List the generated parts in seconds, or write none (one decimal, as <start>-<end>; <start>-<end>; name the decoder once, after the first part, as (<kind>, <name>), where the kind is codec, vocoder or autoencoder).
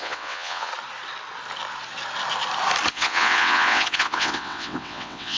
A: 0.0-0.7 (vocoder, WaveNeXt); 2.9-5.4